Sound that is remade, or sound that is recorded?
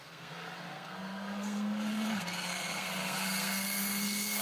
remade